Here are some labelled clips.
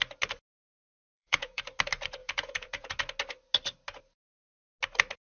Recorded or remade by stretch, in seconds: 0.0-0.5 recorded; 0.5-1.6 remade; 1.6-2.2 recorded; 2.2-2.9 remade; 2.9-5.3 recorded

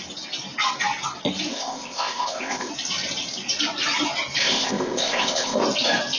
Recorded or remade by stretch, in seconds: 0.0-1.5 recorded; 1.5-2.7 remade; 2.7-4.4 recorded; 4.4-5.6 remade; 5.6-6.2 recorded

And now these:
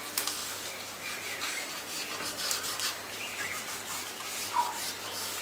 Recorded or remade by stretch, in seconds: 0.0-0.4 recorded; 0.4-3.6 remade; 3.6-4.0 recorded; 4.0-4.9 remade; 4.9-5.4 recorded